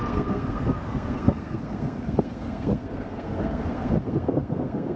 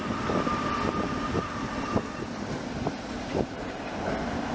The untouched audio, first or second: second